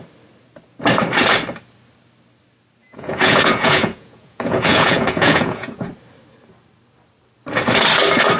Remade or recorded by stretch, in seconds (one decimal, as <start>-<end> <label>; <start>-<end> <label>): 0.0-2.8 recorded; 2.8-5.9 remade; 5.9-8.4 recorded